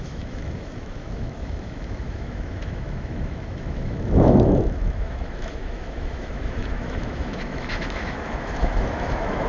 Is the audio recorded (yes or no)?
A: no